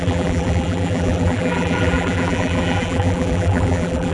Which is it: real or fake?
fake